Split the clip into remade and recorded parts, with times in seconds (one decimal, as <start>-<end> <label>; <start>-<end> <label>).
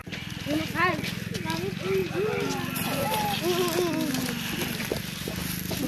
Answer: 0.0-5.9 recorded